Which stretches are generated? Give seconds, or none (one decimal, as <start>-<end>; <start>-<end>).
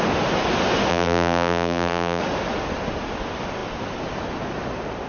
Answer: 0.9-2.2